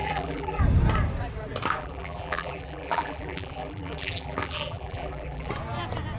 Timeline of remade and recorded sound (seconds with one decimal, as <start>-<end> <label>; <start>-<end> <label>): 0.0-0.6 remade; 0.6-1.8 recorded; 1.8-5.5 remade; 5.5-6.2 recorded

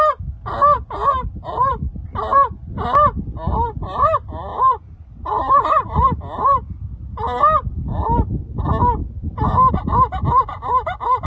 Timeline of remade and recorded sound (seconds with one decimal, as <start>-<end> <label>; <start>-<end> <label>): 0.0-1.9 recorded; 1.9-2.7 remade; 2.7-4.5 recorded; 4.5-6.2 remade; 6.2-9.0 recorded; 9.0-9.7 remade; 9.7-11.3 recorded

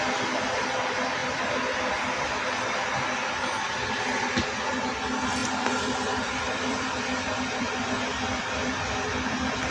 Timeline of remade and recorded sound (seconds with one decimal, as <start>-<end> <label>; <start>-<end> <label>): 0.0-1.2 recorded; 1.2-1.9 remade; 1.9-5.4 recorded; 5.4-8.9 remade; 8.9-9.7 recorded

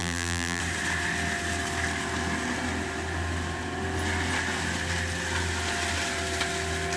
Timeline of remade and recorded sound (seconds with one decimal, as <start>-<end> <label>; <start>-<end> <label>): 0.0-0.6 remade; 0.6-7.0 recorded

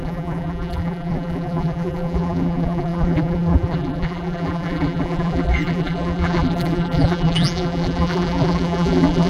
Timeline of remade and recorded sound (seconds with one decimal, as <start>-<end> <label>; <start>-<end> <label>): 0.0-9.3 remade

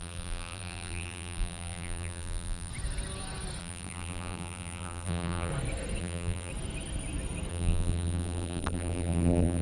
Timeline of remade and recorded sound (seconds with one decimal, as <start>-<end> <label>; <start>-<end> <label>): 0.0-2.7 remade; 2.7-3.6 recorded; 3.6-5.5 remade; 5.5-6.0 recorded; 6.0-6.5 remade; 6.5-7.5 recorded; 7.5-9.6 remade

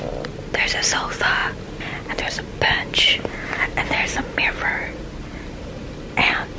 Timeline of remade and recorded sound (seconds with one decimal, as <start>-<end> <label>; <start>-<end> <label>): 0.0-6.6 recorded